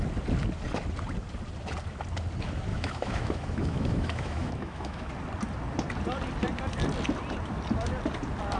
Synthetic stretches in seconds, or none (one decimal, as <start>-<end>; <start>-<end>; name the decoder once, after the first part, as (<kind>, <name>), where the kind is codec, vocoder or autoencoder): 2.7-5.1 (autoencoder, DAC-VAE)